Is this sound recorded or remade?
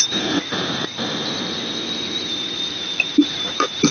remade